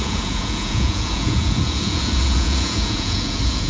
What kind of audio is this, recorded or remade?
remade